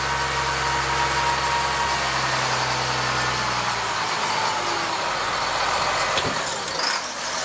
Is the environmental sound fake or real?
real